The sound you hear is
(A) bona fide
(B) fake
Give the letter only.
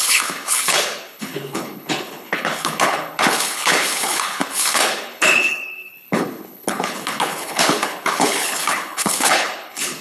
B